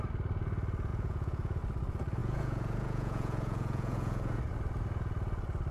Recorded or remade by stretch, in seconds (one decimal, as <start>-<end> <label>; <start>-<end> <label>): 0.0-0.9 recorded; 0.9-1.6 remade; 1.6-2.2 recorded; 2.2-4.4 remade; 4.4-5.7 recorded